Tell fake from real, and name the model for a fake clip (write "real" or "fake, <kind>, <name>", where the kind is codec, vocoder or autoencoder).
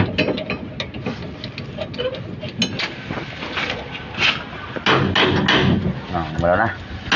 real